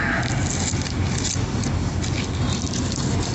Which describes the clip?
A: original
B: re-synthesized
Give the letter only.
A